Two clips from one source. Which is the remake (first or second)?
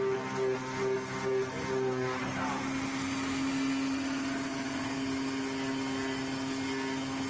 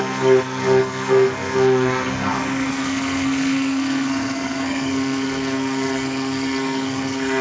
second